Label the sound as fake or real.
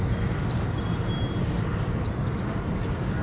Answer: real